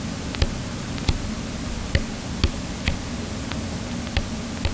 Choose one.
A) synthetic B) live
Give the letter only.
B